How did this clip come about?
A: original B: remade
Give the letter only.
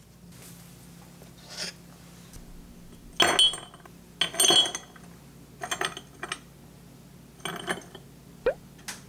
A